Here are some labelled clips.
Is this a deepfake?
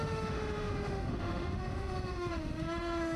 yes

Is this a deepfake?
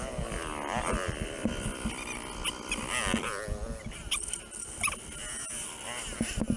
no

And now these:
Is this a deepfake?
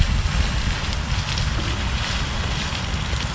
no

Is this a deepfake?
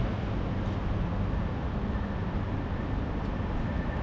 no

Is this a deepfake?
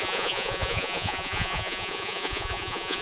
yes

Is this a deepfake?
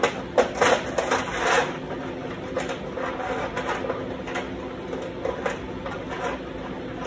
no